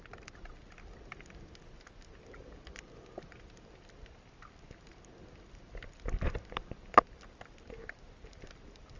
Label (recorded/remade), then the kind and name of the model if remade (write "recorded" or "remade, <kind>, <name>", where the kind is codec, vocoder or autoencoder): recorded